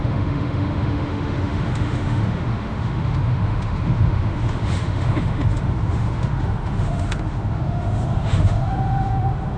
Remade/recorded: remade